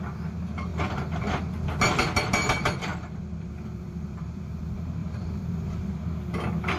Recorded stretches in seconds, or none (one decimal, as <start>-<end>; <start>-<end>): 0.0-0.7; 1.4-2.9; 4.4-5.0; 6.0-6.8